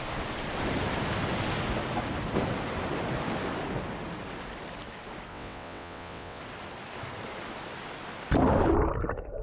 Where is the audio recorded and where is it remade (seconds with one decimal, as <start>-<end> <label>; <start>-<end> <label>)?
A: 0.0-5.3 recorded; 5.3-6.4 remade; 6.4-9.4 recorded